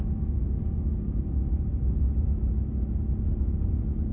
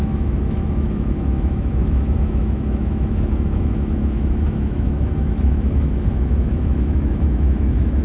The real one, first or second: first